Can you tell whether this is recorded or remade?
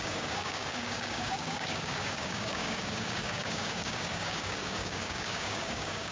remade